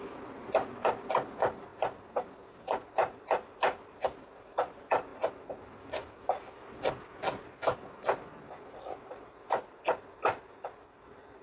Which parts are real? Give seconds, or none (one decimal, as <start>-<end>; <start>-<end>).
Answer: 0.0-11.4

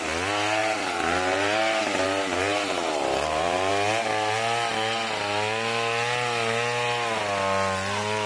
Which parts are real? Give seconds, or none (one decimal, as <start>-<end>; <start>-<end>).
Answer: 0.0-0.6; 3.7-8.3